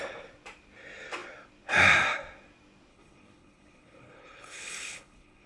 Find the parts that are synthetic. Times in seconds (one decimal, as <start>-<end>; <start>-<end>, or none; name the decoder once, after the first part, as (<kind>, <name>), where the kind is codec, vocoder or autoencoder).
2.9-5.5 (codec, HILCodec)

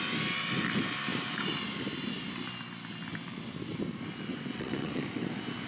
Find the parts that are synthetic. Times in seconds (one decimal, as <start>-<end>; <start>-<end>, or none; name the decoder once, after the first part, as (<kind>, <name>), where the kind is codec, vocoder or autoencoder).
4.3-5.0 (vocoder, WaveNeXt)

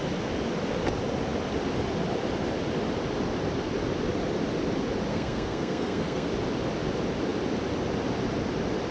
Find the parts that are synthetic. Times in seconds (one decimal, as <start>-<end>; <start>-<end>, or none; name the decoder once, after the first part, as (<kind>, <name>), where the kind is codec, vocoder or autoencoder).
5.1-6.3 (codec, SNAC)

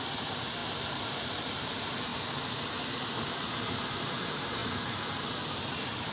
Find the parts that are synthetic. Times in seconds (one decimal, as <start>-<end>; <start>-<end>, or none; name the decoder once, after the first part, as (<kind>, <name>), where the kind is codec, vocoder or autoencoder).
0.0-6.1 (vocoder, BigVGAN v2)